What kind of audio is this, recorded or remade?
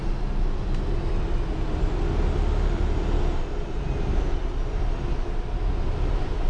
recorded